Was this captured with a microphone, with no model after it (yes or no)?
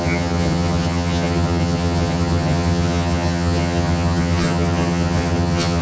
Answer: no